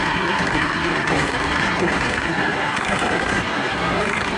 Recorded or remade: remade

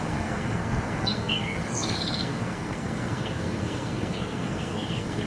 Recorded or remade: remade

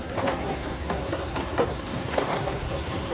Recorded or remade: remade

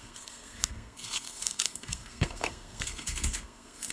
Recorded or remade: remade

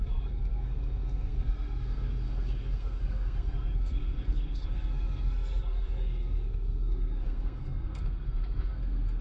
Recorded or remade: remade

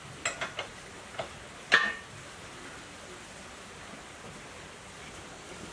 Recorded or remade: recorded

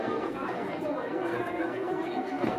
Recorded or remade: remade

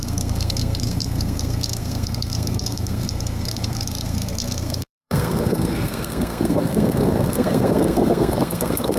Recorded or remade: remade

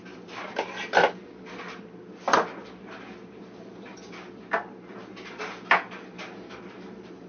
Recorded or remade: recorded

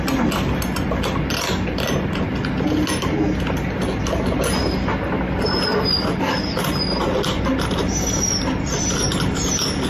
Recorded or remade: recorded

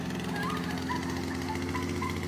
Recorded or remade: recorded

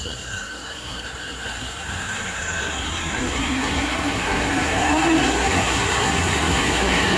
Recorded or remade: remade